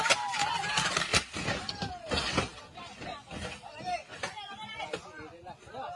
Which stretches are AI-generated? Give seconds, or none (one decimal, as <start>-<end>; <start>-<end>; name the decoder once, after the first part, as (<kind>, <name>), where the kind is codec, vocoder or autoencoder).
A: 1.1-1.9 (vocoder, BigVGAN v2)